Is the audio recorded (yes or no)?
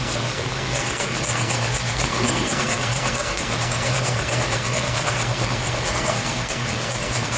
no